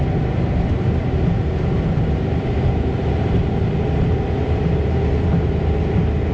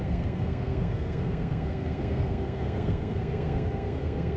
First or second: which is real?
first